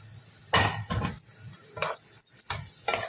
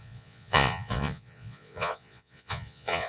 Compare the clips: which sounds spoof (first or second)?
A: second